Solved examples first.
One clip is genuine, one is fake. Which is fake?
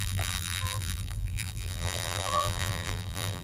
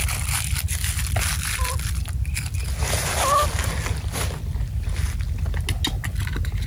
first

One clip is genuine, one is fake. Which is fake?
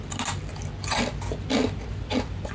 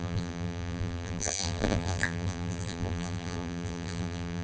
second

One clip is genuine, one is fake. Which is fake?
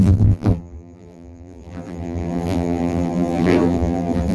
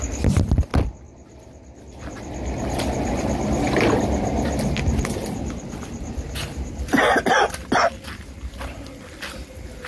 first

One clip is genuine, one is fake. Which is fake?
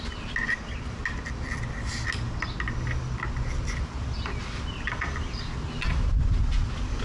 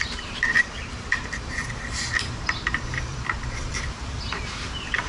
second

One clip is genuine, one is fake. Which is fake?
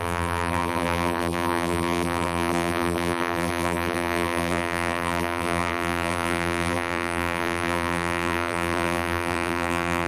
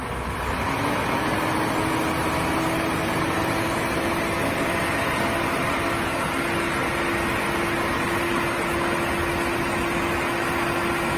first